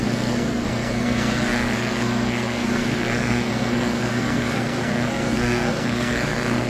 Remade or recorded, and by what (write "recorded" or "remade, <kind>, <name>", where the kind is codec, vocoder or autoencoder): remade, codec, SNAC